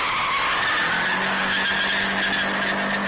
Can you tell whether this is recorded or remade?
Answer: recorded